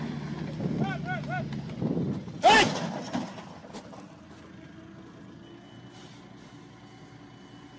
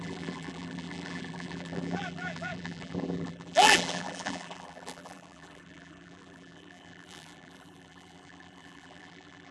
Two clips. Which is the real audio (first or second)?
first